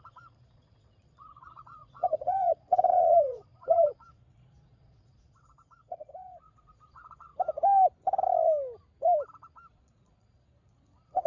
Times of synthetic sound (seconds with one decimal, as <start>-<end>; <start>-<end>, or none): 0.0-7.3; 9.7-11.3